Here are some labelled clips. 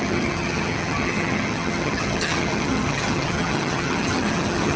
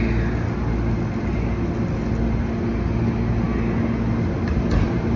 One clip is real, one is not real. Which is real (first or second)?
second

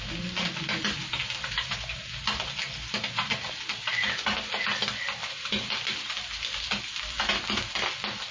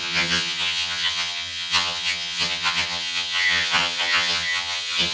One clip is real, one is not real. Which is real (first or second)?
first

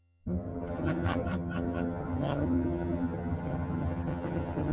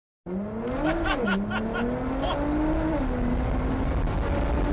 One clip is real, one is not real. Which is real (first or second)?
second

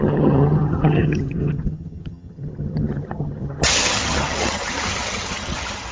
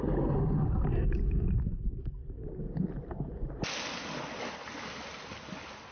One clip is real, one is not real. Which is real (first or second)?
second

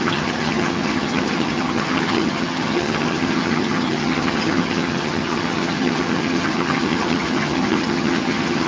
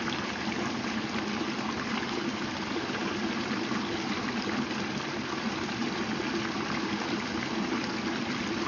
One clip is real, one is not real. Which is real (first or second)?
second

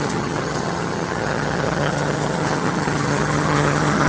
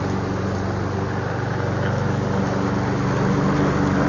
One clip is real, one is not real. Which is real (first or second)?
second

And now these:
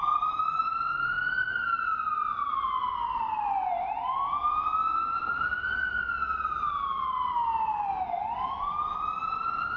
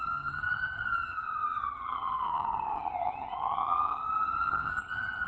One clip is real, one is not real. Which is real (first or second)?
first